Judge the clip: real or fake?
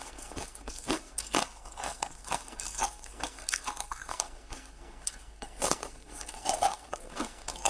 fake